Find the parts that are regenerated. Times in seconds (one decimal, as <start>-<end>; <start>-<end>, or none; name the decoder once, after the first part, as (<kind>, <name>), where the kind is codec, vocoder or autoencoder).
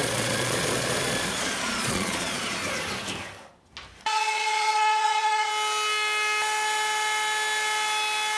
0.0-2.6 (vocoder, Vocos); 4.0-5.5